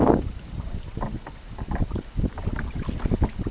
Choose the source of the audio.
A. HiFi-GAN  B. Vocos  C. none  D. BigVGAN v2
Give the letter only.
C